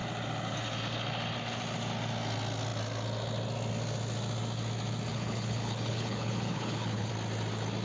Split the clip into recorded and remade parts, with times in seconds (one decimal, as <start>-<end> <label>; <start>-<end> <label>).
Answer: 0.0-5.1 recorded; 5.1-7.1 remade; 7.1-7.8 recorded